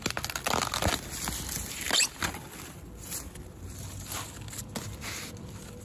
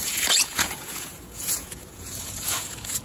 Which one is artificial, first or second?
second